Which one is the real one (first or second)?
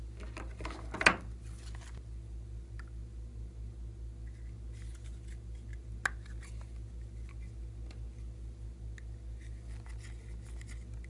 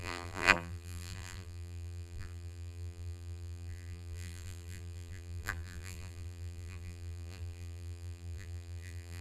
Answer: first